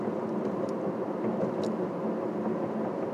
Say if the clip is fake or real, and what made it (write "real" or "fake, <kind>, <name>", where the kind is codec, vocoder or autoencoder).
real